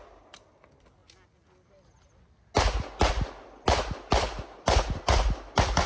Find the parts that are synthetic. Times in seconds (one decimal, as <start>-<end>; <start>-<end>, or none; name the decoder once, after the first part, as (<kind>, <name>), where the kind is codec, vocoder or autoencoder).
none